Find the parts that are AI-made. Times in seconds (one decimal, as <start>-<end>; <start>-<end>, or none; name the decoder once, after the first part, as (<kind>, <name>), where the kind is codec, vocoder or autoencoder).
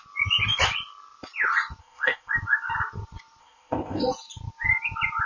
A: 1.8-2.3 (codec, ZipCodec); 3.4-4.0